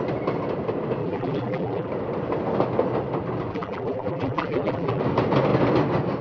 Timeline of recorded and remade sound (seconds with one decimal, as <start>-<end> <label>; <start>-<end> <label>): 0.0-1.0 recorded; 1.0-1.9 remade; 1.9-3.5 recorded; 3.5-5.0 remade; 5.0-6.2 recorded